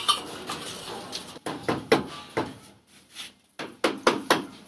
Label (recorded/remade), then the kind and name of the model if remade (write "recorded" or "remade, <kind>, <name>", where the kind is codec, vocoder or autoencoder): recorded